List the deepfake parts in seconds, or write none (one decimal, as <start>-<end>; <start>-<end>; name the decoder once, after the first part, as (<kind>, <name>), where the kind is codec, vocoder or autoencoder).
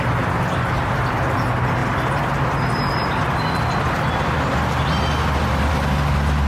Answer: none